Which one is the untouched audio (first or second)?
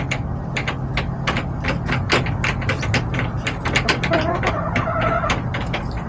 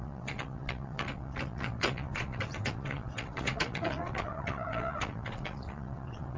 first